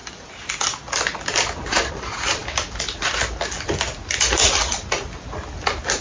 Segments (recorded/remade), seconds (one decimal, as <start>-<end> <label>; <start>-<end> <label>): 0.0-6.0 recorded